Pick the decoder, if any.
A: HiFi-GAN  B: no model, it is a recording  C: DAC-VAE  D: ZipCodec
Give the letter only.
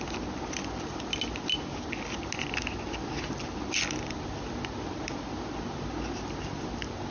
B